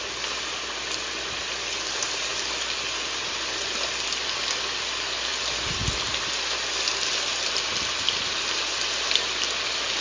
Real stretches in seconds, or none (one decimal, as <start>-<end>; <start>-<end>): 0.0-10.0

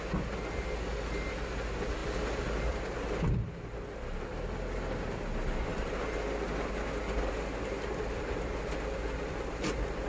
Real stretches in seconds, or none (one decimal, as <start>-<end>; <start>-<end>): 0.0-10.1

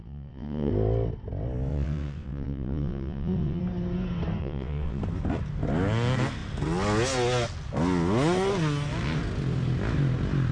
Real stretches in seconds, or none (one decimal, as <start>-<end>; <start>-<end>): 0.7-1.7; 3.6-4.4; 5.0-10.5

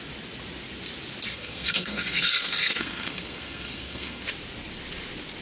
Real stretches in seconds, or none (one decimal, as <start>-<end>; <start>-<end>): 0.0-1.3; 4.2-5.4